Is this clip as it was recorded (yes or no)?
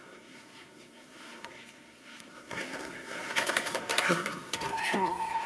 no